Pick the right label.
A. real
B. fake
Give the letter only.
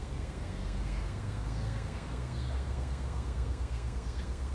B